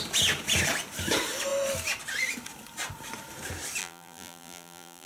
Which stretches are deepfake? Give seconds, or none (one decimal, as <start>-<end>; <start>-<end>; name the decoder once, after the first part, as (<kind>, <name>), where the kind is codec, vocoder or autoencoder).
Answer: 3.8-5.1 (vocoder, BigVGAN v2)

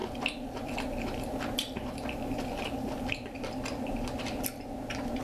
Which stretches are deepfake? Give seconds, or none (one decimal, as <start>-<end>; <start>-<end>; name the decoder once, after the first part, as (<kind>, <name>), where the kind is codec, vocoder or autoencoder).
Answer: 0.0-3.1 (vocoder, BigVGAN v2)

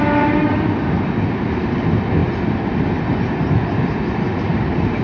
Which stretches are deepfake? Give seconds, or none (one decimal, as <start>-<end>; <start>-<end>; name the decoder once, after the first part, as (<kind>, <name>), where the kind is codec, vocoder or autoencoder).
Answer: 0.5-1.8 (vocoder, BigVGAN v2); 2.2-3.0

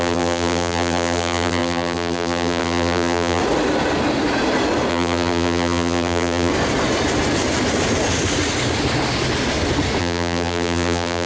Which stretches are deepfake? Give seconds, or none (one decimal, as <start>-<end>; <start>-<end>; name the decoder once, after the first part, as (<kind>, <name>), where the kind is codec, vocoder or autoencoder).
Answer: 0.0-3.4 (vocoder, BigVGAN v2); 4.9-6.5; 10.0-11.3